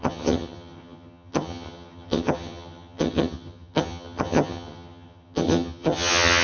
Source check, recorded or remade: remade